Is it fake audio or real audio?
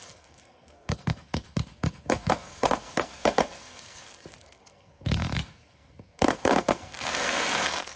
fake